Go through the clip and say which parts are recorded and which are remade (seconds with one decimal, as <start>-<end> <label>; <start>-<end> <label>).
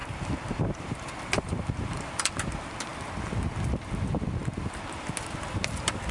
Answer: 0.0-2.4 remade; 2.4-6.1 recorded